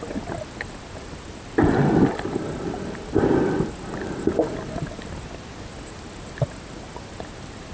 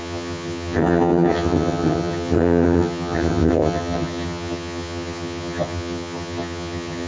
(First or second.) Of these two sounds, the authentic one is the first